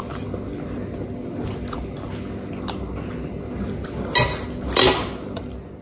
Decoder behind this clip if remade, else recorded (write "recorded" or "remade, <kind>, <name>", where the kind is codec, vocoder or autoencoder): recorded